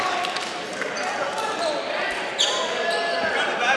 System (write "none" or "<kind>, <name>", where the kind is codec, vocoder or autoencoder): none